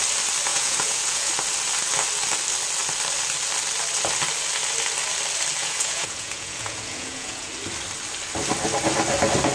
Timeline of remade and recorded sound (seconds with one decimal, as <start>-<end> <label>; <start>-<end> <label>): 0.0-0.5 recorded; 0.5-1.3 remade; 1.3-5.6 recorded; 5.6-7.5 remade; 7.5-9.5 recorded